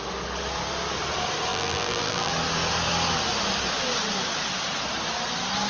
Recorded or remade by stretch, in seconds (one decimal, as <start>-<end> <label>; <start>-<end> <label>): 0.0-1.5 recorded; 1.5-2.3 remade; 2.3-5.7 recorded